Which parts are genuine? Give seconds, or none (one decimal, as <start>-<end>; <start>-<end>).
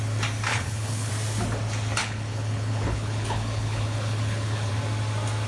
0.0-0.5; 1.1-2.0; 4.7-5.5